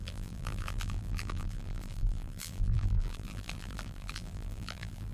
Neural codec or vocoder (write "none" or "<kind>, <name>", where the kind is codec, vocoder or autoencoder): vocoder, BigVGAN v2